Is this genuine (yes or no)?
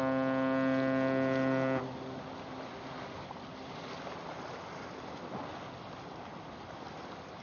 yes